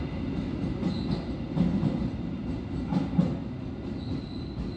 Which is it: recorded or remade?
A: recorded